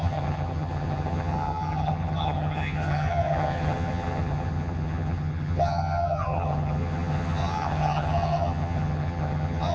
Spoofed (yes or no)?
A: yes